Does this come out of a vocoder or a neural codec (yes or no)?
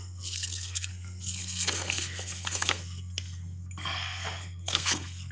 yes